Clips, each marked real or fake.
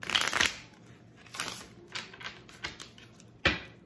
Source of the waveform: real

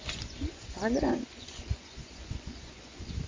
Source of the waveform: fake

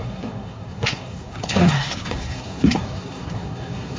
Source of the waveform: fake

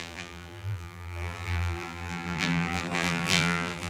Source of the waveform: fake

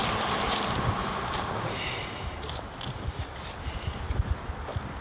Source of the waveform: real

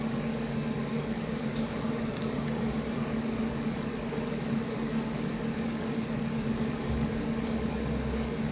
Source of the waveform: fake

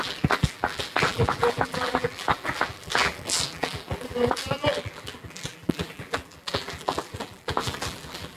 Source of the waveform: fake